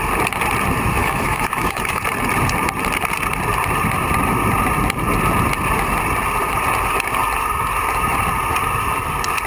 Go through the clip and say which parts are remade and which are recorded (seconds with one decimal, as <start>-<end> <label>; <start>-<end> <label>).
0.0-1.0 recorded; 1.0-2.0 remade; 2.0-9.5 recorded